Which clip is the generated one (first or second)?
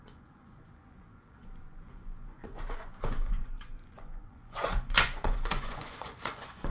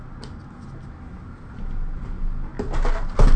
first